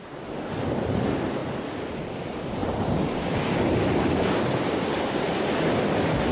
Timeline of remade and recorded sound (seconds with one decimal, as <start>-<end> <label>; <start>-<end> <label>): 0.0-6.3 recorded